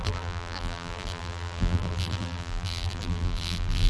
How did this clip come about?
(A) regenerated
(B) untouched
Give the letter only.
A